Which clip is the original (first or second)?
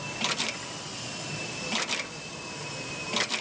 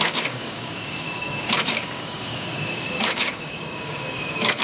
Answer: first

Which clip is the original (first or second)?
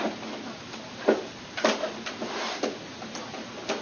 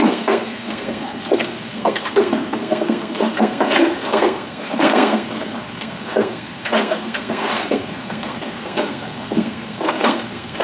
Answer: first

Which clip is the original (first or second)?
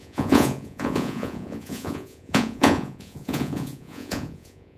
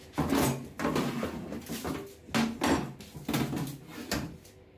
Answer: second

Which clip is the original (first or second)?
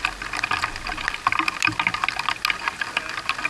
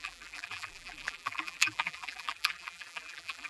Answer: first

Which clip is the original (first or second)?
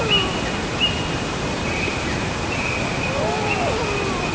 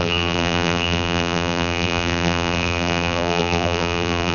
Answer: first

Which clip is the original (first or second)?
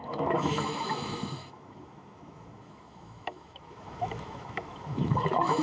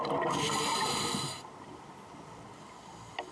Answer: second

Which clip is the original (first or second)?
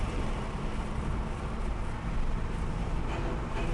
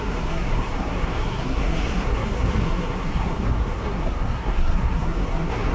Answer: first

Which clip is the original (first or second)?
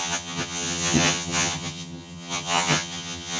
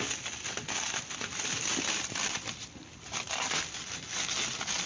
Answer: second